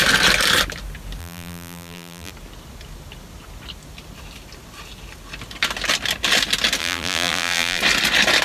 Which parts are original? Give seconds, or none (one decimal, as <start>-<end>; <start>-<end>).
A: 0.0-1.2; 2.3-6.8; 7.8-8.4